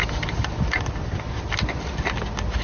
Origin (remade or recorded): recorded